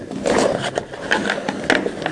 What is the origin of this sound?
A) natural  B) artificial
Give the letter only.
A